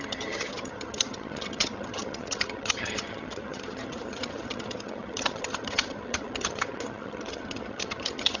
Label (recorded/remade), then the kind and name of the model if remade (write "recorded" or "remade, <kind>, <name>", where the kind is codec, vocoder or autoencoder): remade, vocoder, HiFi-GAN